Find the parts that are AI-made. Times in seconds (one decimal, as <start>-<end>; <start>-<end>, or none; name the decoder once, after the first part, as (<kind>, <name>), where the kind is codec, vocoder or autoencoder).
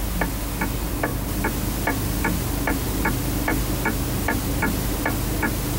none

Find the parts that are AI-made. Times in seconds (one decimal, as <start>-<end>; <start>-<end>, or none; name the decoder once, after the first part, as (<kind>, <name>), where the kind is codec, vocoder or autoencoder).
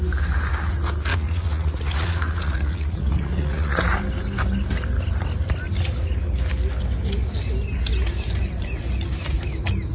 1.1-3.8 (vocoder, Vocos)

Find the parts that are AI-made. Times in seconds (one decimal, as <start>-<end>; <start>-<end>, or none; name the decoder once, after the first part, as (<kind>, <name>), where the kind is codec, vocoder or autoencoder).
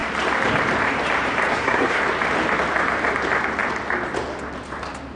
1.5-2.0 (codec, SNAC)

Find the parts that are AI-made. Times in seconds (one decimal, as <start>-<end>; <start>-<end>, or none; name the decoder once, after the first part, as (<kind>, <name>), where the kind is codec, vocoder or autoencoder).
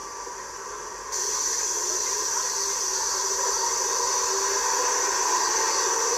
2.9-3.9 (vocoder, BigVGAN v2)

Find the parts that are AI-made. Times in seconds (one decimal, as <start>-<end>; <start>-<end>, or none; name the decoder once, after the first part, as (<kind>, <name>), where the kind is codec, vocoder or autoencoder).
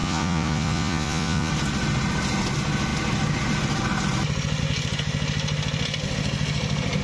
0.0-1.5 (vocoder, Vocos)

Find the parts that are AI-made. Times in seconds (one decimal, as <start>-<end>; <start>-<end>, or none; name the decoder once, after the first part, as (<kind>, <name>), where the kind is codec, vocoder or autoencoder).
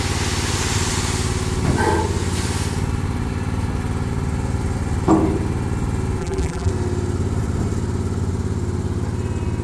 6.2-6.7 (vocoder, BigVGAN v2)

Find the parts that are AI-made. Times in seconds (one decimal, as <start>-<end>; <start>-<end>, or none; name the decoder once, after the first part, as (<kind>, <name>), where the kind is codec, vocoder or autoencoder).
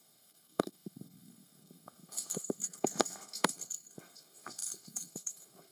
0.0-5.7 (codec, SNAC)